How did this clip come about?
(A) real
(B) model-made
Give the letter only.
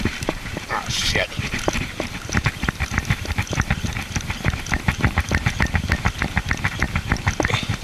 A